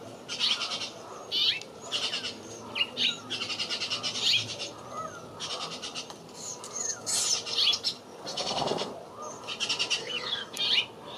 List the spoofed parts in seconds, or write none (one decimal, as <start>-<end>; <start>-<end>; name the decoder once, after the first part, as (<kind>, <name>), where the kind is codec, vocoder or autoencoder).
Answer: 8.3-8.9 (codec, SNAC); 10.0-10.6